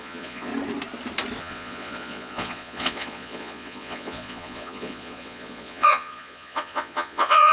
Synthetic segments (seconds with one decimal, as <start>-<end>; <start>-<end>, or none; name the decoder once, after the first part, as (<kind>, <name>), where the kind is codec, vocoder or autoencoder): 0.0-0.5 (vocoder, Vocos); 1.4-7.5